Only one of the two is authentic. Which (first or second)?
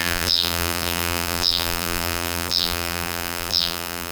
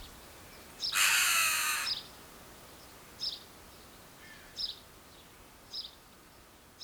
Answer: second